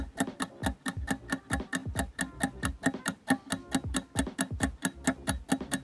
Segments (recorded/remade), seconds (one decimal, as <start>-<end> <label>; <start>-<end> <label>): 0.0-5.8 recorded